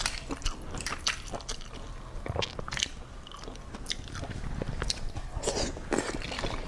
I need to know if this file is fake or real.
real